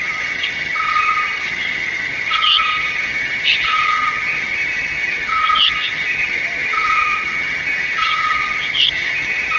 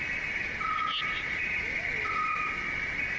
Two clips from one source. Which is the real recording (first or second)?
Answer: second